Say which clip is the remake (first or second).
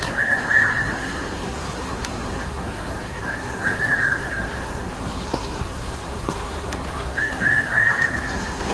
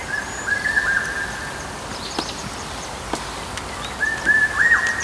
first